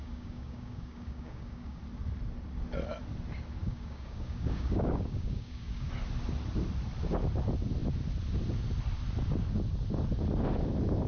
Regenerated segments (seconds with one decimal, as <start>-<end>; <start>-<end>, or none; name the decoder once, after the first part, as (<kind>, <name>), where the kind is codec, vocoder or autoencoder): 0.0-1.8 (codec, DAC); 3.6-5.9